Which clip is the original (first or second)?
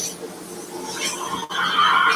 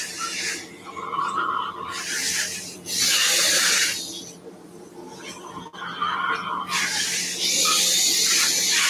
first